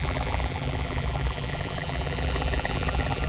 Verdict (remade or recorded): remade